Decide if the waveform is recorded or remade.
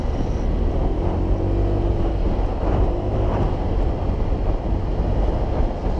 recorded